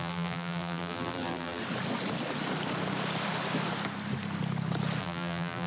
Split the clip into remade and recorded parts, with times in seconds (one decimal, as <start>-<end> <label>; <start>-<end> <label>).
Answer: 0.0-1.6 remade; 1.6-5.0 recorded; 5.0-5.7 remade